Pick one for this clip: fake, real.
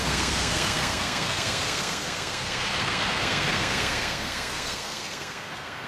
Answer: fake